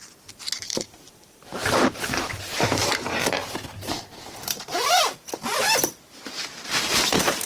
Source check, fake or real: fake